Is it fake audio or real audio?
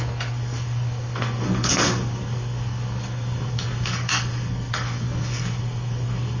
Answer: fake